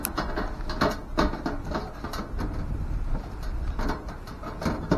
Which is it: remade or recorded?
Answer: recorded